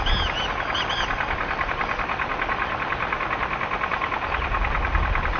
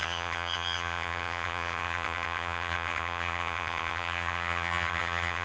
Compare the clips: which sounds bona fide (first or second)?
first